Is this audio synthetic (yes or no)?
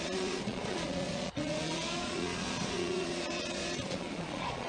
yes